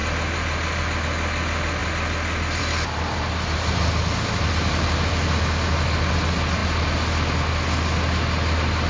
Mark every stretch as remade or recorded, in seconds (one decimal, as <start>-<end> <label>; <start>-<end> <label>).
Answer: 0.0-8.9 recorded